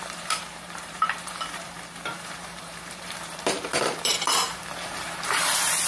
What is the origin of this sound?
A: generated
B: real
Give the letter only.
A